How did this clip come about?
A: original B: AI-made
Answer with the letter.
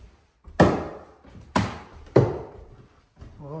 A